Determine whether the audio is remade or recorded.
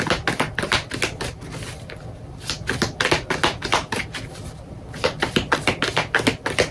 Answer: recorded